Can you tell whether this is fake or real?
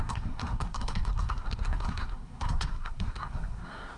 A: fake